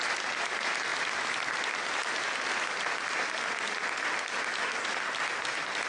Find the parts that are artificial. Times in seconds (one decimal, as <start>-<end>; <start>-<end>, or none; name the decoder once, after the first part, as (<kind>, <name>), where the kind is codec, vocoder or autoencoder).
none